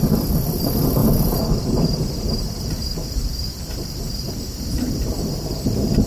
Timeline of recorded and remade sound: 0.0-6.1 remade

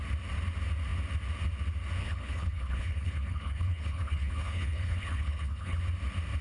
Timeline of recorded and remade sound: 0.0-2.0 recorded; 2.0-5.8 remade; 5.8-6.4 recorded